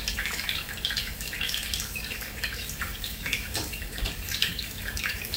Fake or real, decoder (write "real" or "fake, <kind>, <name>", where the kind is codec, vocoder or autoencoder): fake, codec, DAC